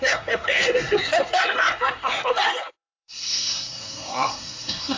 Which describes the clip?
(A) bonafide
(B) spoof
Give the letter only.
B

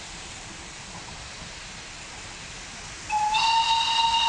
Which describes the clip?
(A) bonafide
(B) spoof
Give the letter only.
A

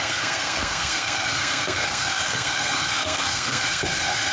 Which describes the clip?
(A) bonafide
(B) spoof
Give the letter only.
B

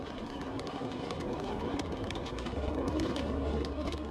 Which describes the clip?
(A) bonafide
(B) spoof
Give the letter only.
B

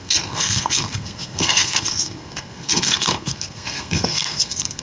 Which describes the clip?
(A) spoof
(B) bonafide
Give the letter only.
A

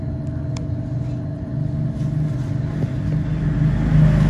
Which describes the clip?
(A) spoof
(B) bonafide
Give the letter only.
B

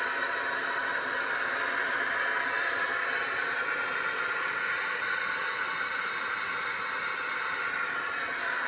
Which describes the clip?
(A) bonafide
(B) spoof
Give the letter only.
A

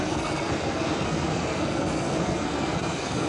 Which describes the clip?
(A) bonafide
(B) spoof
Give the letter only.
B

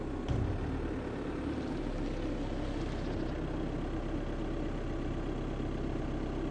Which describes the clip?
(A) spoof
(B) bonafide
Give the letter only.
B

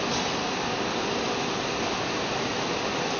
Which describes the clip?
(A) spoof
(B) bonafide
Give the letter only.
B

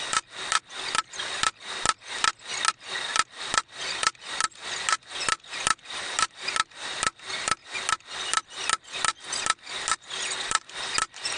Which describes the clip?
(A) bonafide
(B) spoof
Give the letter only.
A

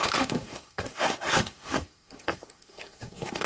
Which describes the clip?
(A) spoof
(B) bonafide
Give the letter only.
A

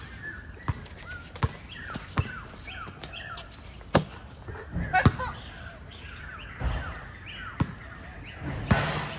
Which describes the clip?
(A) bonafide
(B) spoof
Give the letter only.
A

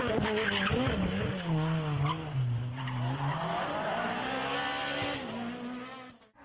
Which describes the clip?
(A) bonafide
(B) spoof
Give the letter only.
A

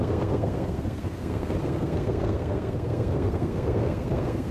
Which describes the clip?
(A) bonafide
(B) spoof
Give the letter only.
B